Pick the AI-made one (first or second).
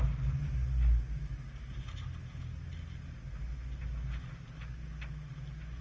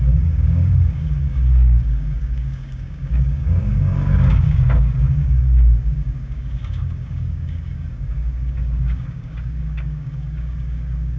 second